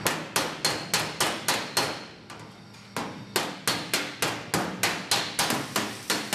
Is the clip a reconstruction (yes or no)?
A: no